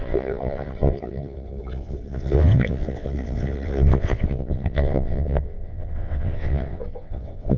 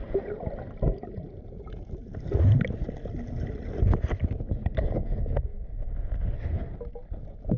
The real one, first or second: second